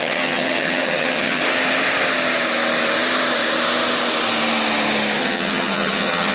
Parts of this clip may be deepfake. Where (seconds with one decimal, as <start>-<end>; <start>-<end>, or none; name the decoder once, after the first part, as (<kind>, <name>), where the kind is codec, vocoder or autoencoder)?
0.0-1.4 (vocoder, HiFi-GAN); 5.2-6.3